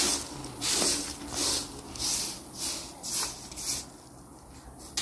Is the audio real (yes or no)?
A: yes